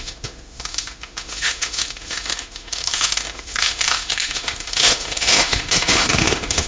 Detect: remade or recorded remade